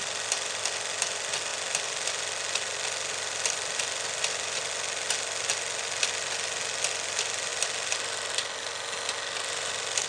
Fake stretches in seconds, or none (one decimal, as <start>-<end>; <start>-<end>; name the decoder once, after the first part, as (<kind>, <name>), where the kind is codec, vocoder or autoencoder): 1.5-4.7 (vocoder, BigVGAN v2); 7.5-8.4